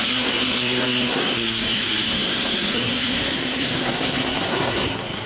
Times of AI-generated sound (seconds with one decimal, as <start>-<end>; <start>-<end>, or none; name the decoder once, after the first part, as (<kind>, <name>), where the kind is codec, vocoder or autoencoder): 0.0-5.3 (codec, SNAC)